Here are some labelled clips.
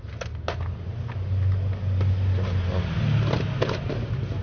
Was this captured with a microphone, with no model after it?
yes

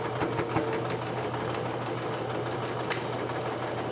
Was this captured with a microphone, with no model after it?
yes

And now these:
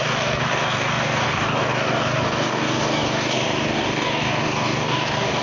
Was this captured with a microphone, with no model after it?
no